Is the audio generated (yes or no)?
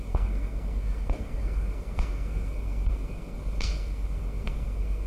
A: yes